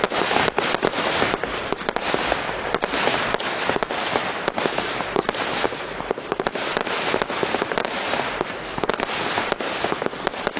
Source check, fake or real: real